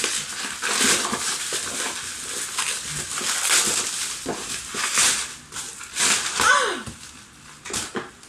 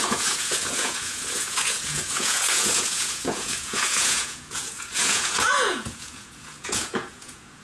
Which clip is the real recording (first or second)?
first